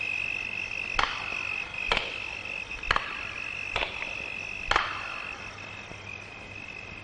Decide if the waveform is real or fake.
real